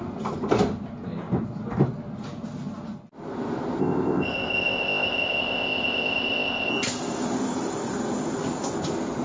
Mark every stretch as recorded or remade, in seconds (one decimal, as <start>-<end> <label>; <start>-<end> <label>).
0.0-3.8 recorded; 3.8-6.7 remade; 6.7-9.2 recorded